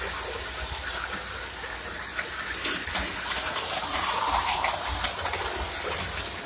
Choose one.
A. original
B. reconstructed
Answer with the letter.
A